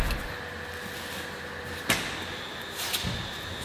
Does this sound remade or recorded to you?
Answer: recorded